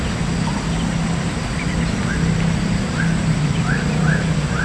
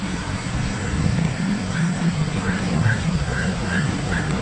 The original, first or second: first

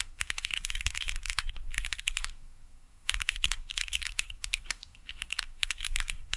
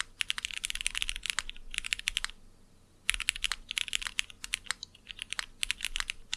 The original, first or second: second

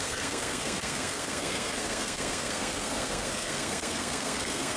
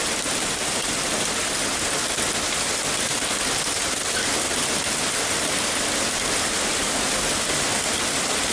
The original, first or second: second